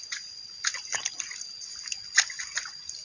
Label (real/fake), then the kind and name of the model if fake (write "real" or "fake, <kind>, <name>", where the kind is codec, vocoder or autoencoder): real